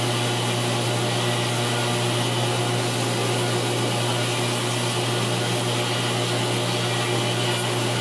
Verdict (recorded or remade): recorded